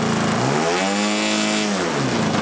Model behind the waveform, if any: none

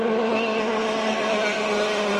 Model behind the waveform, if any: none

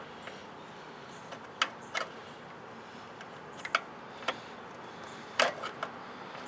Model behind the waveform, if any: none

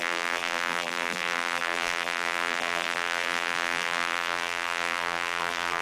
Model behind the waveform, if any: vocoder, BigVGAN v2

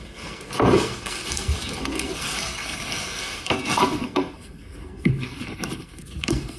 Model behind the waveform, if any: codec, SNAC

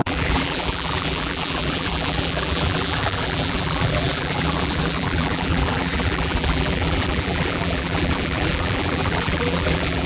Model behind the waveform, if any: vocoder, BigVGAN v2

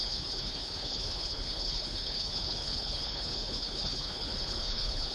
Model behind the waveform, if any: codec, HILCodec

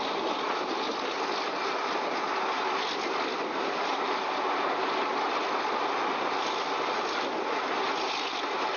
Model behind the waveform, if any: none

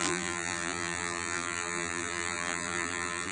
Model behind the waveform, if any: vocoder, BigVGAN v2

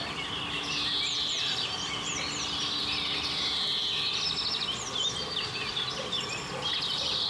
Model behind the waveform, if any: none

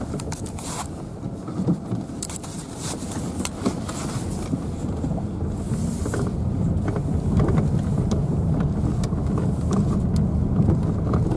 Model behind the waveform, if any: none